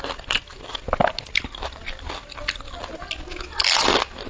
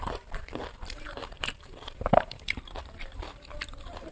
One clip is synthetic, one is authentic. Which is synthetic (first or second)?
second